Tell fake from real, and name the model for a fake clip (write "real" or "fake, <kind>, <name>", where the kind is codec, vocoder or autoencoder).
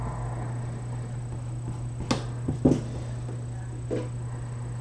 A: real